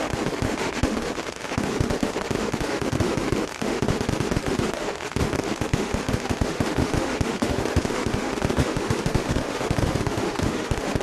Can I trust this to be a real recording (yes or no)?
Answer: no